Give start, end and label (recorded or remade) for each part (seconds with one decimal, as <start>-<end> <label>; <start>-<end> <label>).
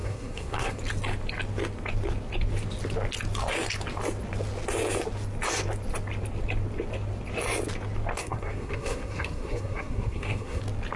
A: 0.0-0.8 remade; 0.8-8.2 recorded; 8.2-10.6 remade; 10.6-11.0 recorded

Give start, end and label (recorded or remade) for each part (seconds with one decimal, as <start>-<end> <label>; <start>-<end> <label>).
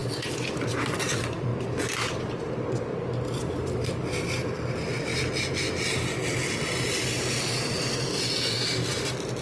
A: 0.0-0.7 recorded; 0.7-1.5 remade; 1.5-2.1 recorded; 2.1-5.1 remade; 5.1-9.4 recorded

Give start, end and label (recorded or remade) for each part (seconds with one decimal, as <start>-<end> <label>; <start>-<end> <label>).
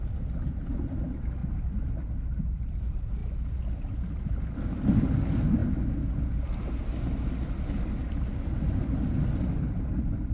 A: 0.0-10.3 recorded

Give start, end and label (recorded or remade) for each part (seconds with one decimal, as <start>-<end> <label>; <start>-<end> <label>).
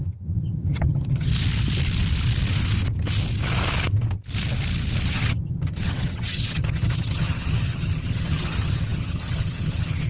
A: 0.0-1.3 remade; 1.3-5.1 recorded; 5.1-10.1 remade